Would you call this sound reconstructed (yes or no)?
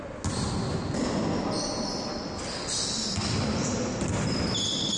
no